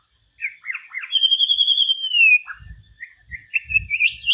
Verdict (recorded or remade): recorded